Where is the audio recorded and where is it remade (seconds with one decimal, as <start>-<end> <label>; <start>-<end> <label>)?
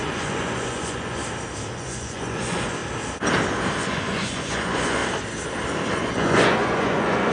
0.0-1.2 remade; 1.2-1.8 recorded; 1.8-2.8 remade; 2.8-3.8 recorded; 3.8-5.0 remade; 5.0-6.0 recorded; 6.0-7.3 remade